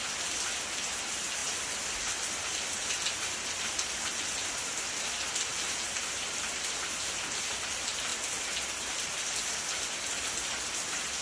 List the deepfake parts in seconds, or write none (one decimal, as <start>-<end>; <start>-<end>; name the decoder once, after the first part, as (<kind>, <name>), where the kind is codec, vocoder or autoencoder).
5.5-6.8 (vocoder, BigVGAN v2)